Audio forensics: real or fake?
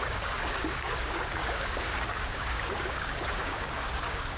fake